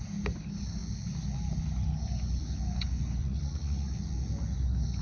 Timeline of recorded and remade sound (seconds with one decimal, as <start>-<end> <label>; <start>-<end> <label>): 0.0-3.2 recorded; 3.2-3.9 remade; 3.9-5.0 recorded